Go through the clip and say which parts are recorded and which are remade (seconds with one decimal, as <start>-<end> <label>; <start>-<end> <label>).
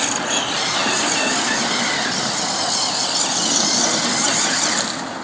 0.0-5.2 recorded